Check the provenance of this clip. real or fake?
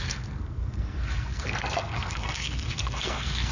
fake